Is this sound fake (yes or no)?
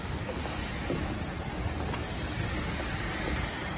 no